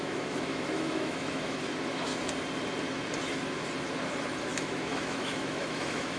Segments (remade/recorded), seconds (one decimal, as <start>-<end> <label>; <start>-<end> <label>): 0.0-2.1 remade; 2.1-4.4 recorded; 4.4-6.2 remade